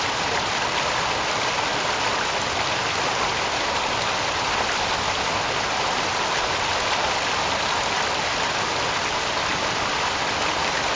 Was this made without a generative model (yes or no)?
yes